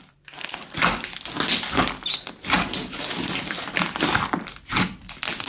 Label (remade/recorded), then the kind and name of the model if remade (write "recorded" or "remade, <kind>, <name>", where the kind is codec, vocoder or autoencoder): recorded